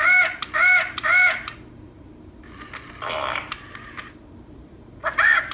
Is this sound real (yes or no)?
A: yes